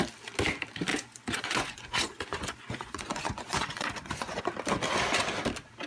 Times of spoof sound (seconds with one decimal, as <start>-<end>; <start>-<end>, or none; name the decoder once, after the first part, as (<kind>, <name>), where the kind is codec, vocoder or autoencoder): 0.9-4.4 (vocoder, Vocos)